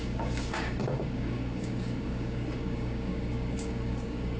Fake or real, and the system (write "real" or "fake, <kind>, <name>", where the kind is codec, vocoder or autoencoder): fake, codec, DAC